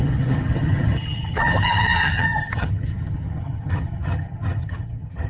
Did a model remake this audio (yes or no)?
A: yes